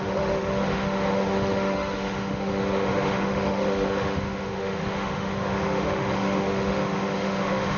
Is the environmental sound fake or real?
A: fake